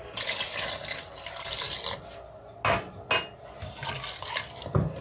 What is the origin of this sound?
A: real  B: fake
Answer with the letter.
A